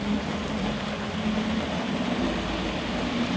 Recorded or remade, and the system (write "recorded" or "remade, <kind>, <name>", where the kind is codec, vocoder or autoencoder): recorded